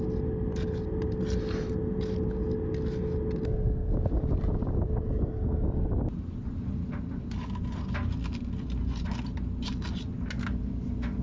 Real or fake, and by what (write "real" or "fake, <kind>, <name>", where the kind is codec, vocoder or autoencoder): real